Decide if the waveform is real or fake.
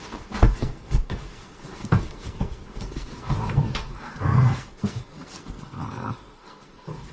fake